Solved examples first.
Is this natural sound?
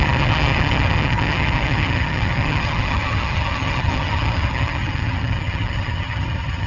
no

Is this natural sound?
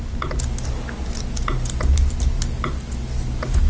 yes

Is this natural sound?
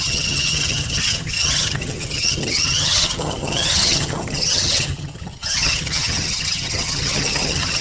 no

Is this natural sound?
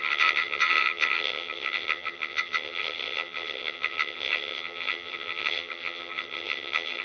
no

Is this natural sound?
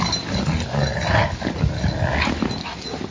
yes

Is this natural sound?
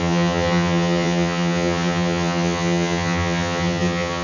no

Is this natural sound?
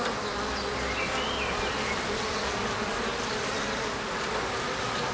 yes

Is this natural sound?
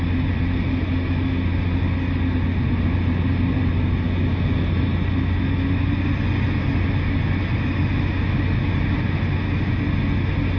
yes